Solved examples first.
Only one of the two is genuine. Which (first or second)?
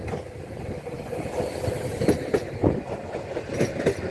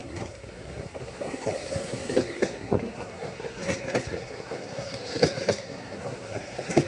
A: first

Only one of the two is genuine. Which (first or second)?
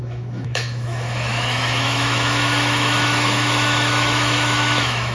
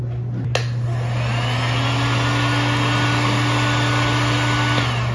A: second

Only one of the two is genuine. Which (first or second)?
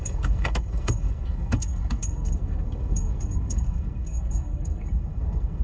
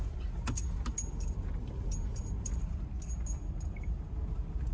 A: second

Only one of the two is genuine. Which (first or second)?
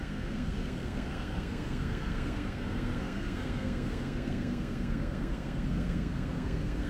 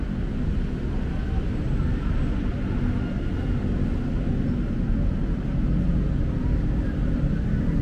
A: second